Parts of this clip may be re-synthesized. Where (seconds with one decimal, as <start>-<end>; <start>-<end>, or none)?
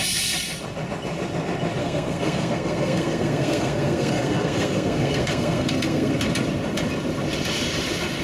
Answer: 1.8-6.1